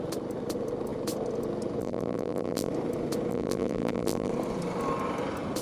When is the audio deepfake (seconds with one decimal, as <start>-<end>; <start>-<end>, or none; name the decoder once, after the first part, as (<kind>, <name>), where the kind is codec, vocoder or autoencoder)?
1.8-2.7 (vocoder, BigVGAN v2); 3.3-4.3